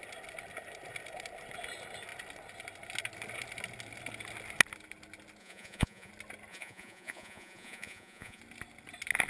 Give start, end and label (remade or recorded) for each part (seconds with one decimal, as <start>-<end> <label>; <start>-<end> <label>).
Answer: 0.0-5.4 recorded; 5.4-6.1 remade; 6.1-6.5 recorded; 6.5-8.4 remade; 8.4-9.3 recorded